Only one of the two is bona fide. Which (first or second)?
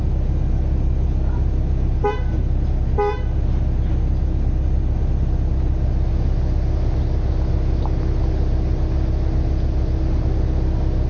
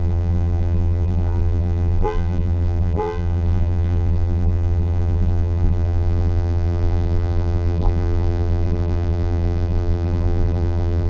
first